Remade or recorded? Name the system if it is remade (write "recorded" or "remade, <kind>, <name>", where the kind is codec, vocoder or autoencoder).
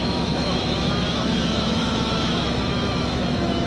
remade, autoencoder, DAC-VAE